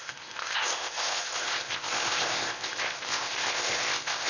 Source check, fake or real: fake